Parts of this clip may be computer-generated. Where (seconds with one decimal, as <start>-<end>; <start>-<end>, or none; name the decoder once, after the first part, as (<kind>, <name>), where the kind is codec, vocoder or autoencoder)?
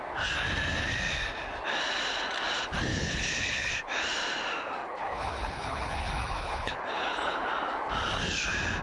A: 2.9-3.7 (codec, HILCodec); 4.8-7.5